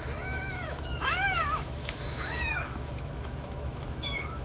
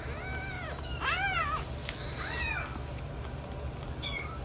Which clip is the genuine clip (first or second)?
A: second